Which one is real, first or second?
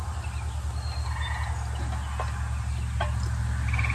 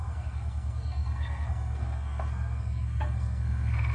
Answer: first